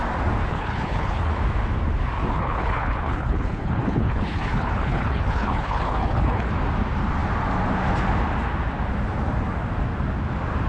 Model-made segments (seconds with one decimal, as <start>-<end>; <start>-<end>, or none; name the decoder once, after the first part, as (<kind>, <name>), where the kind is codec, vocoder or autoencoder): 0.5-1.3 (codec, HILCodec); 2.3-6.5